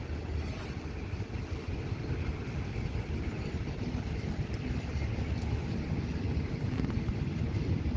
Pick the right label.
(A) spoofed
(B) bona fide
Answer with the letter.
B